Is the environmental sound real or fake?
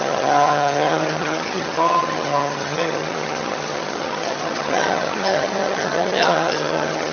fake